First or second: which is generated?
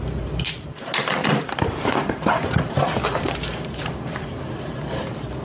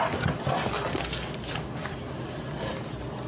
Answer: first